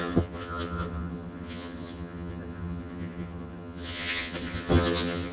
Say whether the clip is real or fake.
fake